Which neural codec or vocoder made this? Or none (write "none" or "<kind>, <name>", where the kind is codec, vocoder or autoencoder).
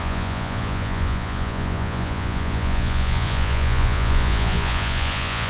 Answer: vocoder, Vocos